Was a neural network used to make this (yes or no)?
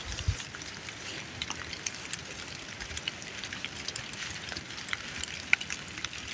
yes